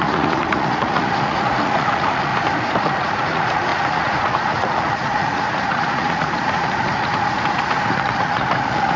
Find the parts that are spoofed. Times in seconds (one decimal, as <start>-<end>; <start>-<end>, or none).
0.0-2.3; 2.8-9.0